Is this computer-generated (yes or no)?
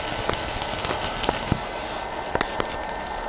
no